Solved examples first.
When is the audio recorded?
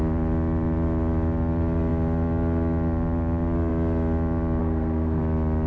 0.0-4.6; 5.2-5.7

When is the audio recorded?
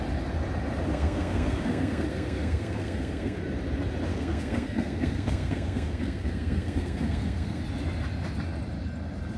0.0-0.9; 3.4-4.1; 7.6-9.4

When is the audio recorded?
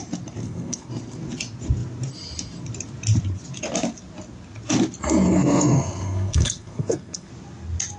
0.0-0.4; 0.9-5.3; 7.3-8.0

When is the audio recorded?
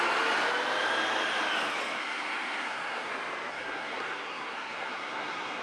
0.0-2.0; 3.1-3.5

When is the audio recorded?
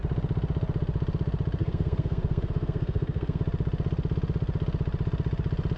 0.0-1.6; 3.4-5.8